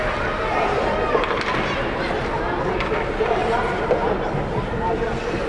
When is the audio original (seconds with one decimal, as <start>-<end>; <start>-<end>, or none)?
0.0-5.5